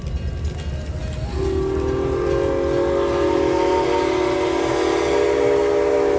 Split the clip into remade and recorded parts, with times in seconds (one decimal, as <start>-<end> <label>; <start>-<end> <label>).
0.0-6.2 recorded